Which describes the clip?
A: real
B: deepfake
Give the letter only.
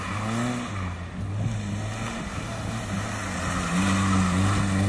A